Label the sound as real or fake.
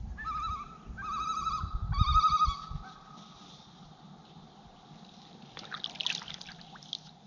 real